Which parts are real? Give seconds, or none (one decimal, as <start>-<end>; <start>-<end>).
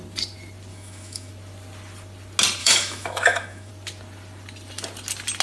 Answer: 0.0-0.7; 1.3-2.6; 3.7-5.4